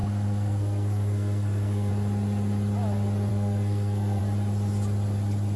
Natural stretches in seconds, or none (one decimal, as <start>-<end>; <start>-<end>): 1.9-3.3; 4.2-5.6

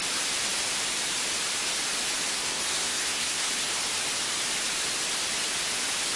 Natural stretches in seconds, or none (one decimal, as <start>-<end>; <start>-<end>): 0.0-2.3; 3.5-6.2

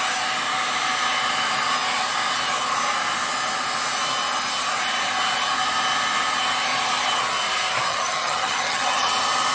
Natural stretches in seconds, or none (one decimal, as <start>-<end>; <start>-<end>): 0.0-7.9; 9.1-9.5

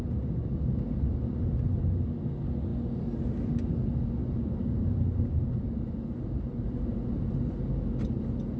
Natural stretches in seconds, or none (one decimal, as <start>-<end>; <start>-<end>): 0.0-0.4; 1.1-4.2; 7.5-8.6

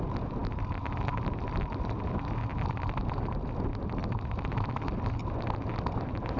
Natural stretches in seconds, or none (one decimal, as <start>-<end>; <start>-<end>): 0.0-6.4

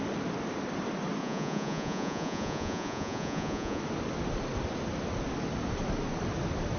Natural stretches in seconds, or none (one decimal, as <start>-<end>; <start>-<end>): 0.0-1.2; 3.8-6.8

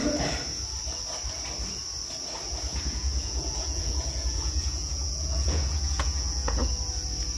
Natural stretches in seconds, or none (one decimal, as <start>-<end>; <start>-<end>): 0.0-2.7; 6.7-7.4

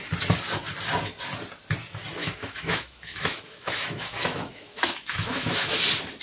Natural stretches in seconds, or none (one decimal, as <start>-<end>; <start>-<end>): 0.0-2.2; 5.8-6.2